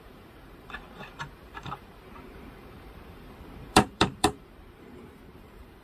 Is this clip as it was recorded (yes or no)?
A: no